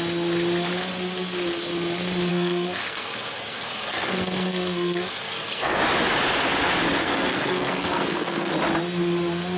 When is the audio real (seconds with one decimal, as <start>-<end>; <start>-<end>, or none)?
0.0-2.3; 5.8-7.0; 8.5-9.6